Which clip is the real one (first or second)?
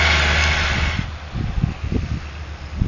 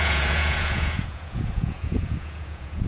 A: first